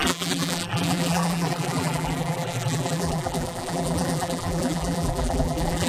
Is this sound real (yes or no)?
no